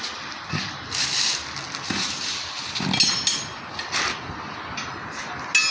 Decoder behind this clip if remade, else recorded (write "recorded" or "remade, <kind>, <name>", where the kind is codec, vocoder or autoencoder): recorded